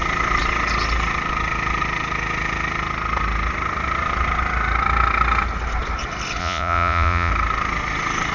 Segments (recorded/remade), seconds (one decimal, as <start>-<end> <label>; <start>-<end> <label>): 0.0-6.4 recorded; 6.4-7.3 remade; 7.3-8.3 recorded